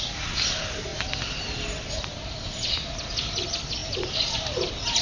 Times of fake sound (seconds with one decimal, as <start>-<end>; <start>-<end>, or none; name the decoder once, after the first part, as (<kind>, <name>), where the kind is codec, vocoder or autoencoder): none